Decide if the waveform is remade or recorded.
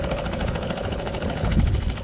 remade